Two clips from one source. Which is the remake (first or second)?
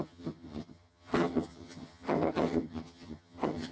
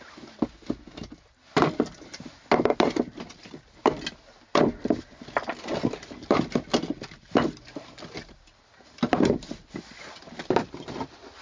first